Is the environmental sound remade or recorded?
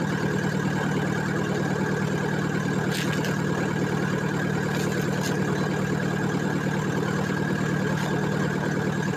recorded